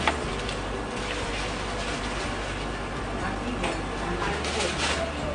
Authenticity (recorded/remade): recorded